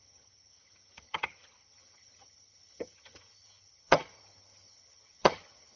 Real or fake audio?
fake